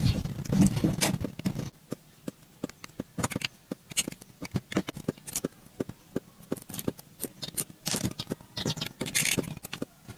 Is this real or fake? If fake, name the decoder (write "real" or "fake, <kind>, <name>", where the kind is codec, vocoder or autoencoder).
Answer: real